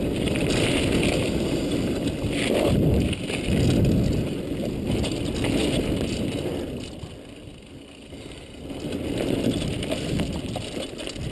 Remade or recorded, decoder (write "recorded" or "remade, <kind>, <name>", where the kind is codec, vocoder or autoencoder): recorded